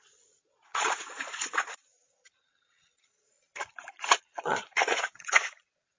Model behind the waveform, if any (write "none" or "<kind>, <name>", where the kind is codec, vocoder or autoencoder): vocoder, Vocos